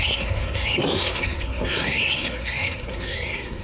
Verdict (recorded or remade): remade